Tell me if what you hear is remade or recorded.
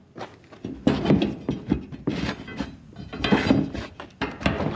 recorded